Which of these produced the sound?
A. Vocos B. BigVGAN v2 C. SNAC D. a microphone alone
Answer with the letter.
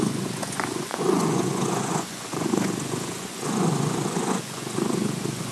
A